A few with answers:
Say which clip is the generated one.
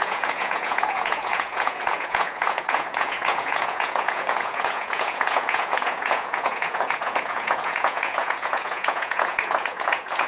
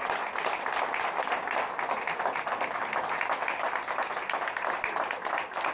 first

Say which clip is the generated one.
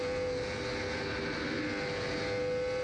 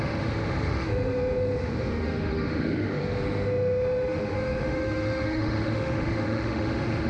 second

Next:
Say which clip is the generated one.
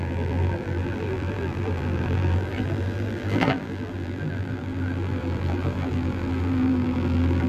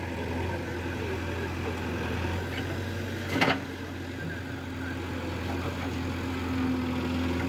first